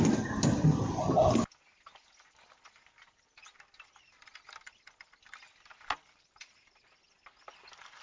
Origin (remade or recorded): recorded